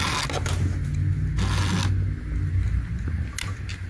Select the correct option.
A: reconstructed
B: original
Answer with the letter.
B